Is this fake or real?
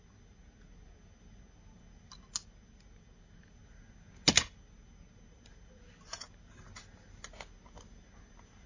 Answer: real